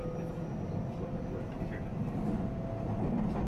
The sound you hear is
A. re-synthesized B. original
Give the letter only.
B